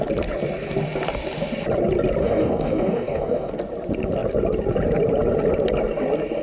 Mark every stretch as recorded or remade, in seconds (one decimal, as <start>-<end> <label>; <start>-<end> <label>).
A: 0.0-2.2 recorded; 2.2-3.5 remade; 3.5-6.4 recorded